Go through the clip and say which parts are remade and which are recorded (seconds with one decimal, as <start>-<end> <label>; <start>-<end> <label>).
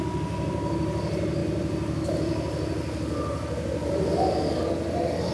0.0-5.3 recorded